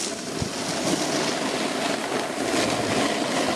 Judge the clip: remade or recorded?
recorded